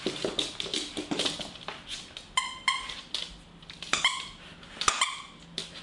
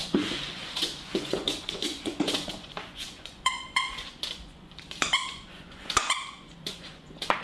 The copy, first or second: second